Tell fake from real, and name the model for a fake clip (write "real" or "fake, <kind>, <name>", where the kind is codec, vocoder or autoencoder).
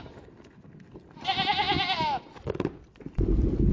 real